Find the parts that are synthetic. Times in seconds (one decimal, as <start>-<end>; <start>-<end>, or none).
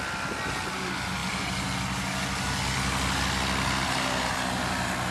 none